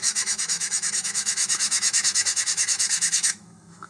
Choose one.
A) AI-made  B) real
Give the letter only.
A